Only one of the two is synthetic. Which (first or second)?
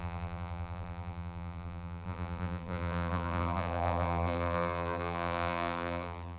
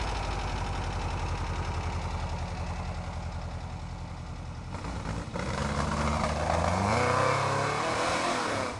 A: first